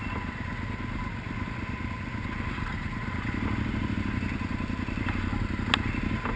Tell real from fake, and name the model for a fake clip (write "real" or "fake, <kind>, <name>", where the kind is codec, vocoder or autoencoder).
real